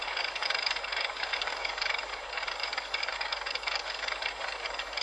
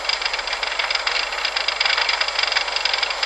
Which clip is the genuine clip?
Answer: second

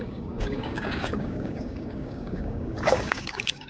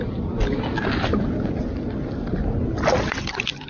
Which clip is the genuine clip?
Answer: second